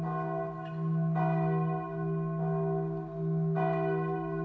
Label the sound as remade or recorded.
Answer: recorded